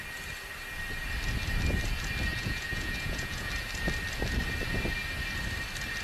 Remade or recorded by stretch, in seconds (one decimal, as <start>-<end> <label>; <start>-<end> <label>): 0.0-2.3 recorded; 2.3-3.5 remade; 3.5-6.0 recorded